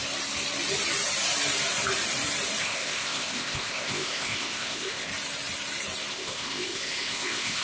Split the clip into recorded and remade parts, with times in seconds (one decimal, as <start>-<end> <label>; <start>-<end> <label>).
0.0-2.6 recorded; 2.6-5.1 remade; 5.1-6.1 recorded; 6.1-7.6 remade